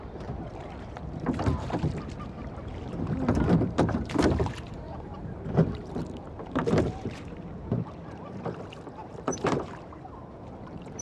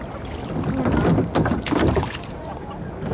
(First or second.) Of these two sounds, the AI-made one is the first